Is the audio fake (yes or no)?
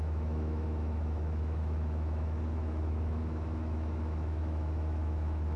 yes